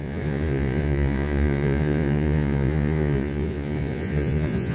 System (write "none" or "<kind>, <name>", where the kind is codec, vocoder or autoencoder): vocoder, Vocos